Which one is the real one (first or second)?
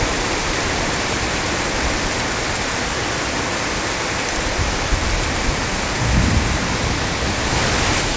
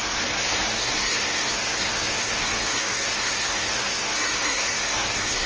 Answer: first